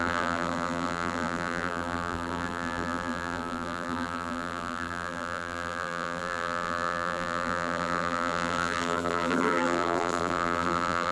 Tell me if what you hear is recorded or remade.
remade